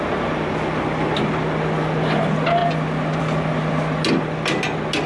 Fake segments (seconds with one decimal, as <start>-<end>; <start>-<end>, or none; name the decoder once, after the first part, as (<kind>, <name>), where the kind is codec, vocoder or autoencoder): none